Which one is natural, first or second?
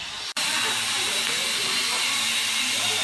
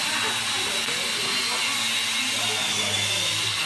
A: second